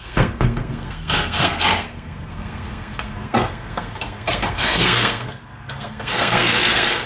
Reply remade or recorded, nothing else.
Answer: remade